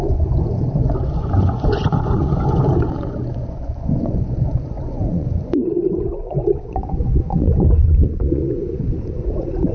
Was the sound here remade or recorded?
remade